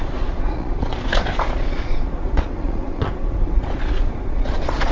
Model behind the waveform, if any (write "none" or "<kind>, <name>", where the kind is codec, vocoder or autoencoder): vocoder, Vocos